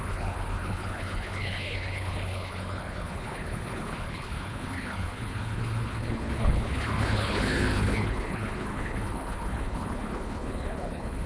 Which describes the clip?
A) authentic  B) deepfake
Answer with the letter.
B